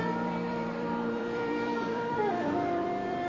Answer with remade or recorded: remade